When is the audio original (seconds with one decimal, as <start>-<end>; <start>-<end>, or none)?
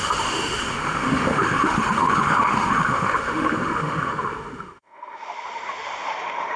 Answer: none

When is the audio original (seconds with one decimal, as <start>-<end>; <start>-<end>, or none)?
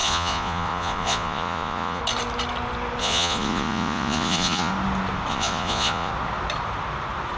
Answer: 2.0-3.0; 4.7-5.3; 6.1-7.4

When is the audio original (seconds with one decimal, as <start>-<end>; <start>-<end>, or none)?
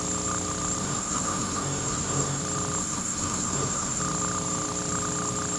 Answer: 0.0-0.8; 2.4-2.8; 4.0-5.6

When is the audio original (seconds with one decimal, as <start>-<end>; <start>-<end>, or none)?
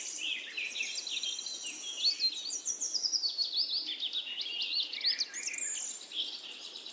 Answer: 0.0-6.9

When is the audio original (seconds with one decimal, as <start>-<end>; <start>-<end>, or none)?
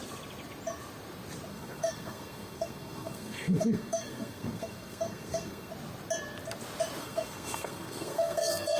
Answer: 0.0-1.5; 5.7-7.0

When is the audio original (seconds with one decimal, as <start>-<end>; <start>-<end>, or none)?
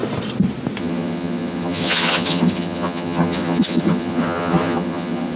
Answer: 0.0-0.8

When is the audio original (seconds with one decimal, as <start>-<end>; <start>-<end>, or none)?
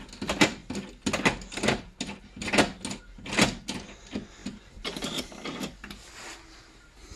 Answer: 0.0-7.2